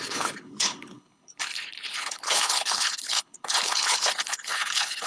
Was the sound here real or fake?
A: fake